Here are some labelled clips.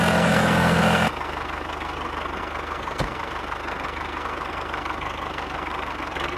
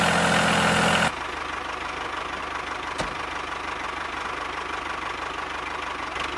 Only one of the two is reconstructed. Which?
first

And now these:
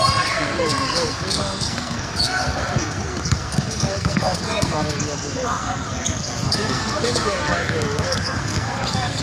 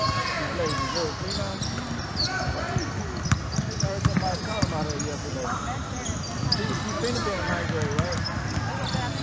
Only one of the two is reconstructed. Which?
first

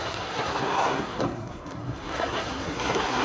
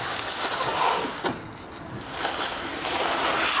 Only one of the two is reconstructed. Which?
first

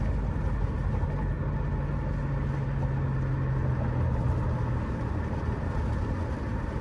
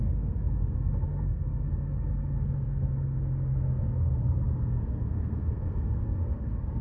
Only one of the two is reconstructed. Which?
second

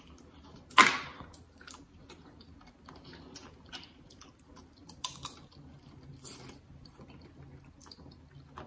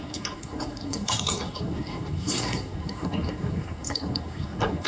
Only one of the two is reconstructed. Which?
second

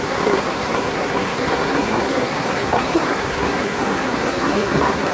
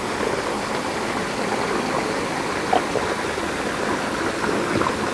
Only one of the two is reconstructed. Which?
first